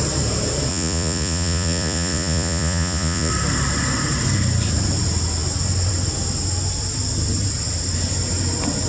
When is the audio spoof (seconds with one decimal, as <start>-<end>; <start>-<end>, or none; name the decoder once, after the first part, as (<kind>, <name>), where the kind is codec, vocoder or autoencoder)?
0.7-3.3 (vocoder, Vocos)